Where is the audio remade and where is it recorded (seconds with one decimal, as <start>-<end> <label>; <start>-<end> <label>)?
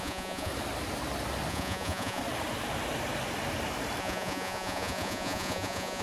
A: 0.0-0.5 remade; 0.5-1.5 recorded; 1.5-2.2 remade; 2.2-4.0 recorded; 4.0-6.0 remade